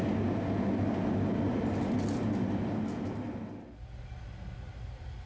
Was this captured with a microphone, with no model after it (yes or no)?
yes